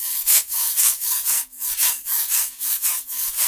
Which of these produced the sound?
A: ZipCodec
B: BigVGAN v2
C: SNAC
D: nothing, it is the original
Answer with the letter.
C